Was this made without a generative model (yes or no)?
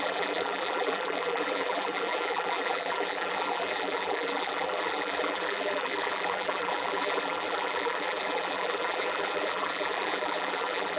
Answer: no